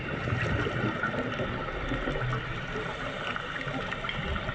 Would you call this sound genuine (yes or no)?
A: yes